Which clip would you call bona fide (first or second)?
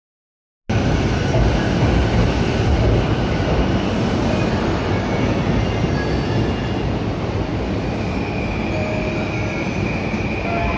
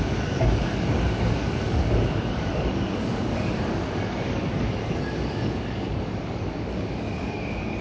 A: first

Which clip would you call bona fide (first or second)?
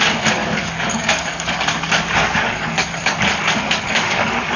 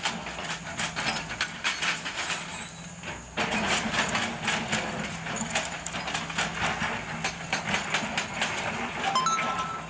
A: second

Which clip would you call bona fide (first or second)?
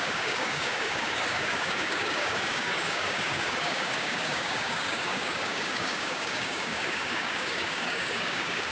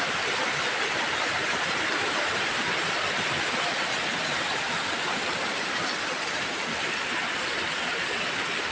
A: second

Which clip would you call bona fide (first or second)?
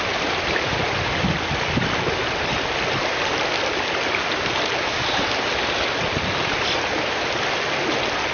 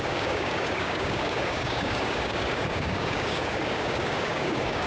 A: first